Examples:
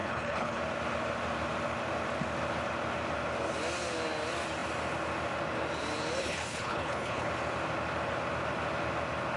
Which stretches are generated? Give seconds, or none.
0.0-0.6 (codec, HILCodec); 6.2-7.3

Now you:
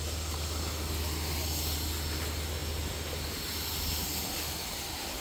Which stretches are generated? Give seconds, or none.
none

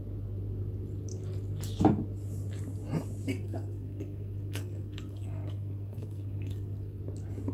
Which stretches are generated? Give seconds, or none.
3.3-7.0 (codec, SNAC)

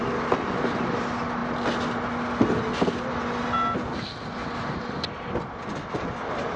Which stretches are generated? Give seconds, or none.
none

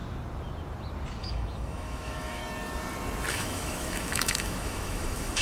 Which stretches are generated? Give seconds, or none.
1.2-2.4 (autoencoder, DAC-VAE); 3.3-5.4

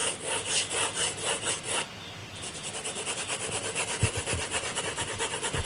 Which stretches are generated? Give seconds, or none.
0.0-1.5 (vocoder, BigVGAN v2); 2.2-4.8

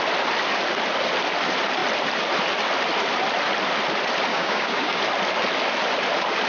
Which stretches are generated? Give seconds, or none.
4.3-5.0 (codec, DAC)

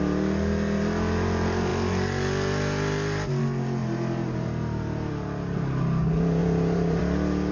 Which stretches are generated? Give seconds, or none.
3.8-5.1 (vocoder, BigVGAN v2); 6.4-7.0